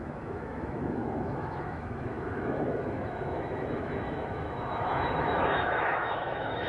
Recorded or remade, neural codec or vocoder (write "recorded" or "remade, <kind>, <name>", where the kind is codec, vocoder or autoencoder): remade, autoencoder, DAC-VAE